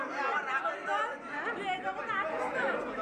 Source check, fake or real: real